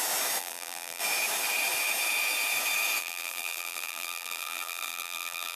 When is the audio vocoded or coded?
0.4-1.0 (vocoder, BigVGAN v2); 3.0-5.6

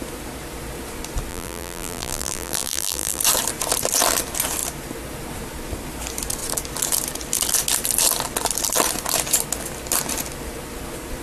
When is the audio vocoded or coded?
1.3-3.2 (vocoder, BigVGAN v2)

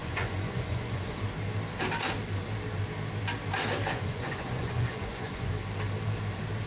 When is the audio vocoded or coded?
0.0-1.2 (vocoder, Vocos); 3.9-5.5

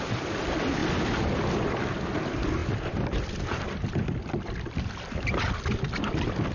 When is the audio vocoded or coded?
none

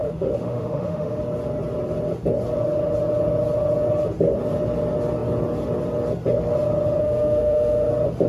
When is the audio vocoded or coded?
0.0-1.2 (autoencoder, DAC-VAE); 7.0-7.9